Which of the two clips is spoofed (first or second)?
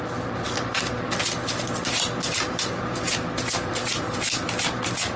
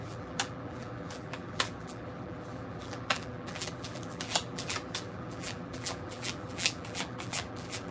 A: second